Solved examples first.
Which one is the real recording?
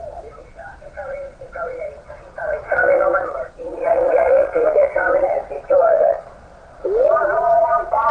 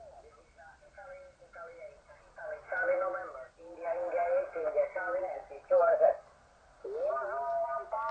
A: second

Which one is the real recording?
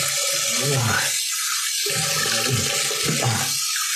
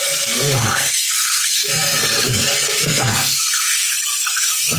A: first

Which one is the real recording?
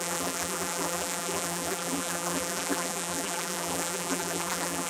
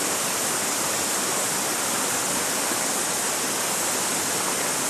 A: second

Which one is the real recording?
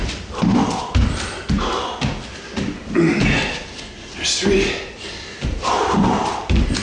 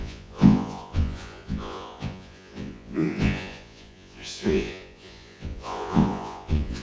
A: first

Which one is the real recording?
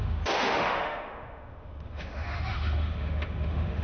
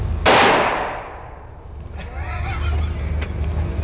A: second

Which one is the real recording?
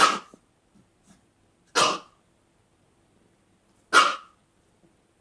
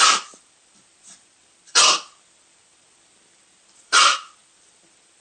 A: first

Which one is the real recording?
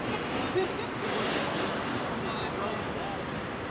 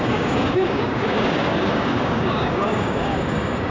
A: first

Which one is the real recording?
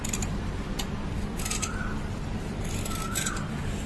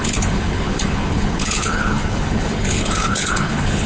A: first